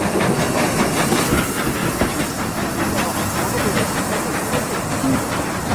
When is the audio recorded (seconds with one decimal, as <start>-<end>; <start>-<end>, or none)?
1.8-4.0